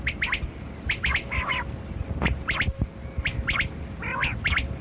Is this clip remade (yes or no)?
no